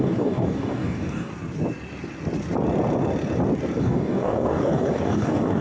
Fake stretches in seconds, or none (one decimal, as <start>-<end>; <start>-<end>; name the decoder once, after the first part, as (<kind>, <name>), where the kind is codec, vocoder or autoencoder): 0.0-1.3 (codec, DAC); 3.8-5.6